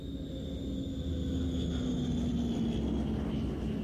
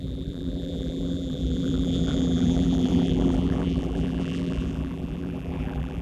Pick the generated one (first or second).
second